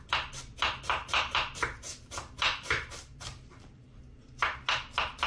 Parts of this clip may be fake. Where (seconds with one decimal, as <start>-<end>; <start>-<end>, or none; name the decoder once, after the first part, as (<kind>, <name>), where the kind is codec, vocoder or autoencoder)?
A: 1.9-4.0 (vocoder, BigVGAN v2)